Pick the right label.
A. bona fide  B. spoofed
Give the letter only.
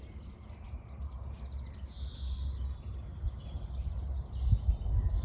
A